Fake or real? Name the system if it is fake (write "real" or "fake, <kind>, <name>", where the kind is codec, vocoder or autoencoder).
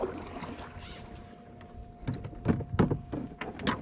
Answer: real